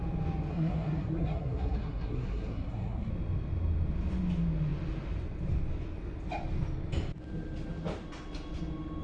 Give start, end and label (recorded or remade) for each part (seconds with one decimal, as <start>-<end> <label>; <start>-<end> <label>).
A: 0.0-0.5 recorded; 0.5-3.1 remade; 3.1-9.0 recorded